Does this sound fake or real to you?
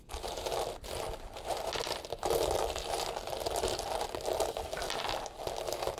real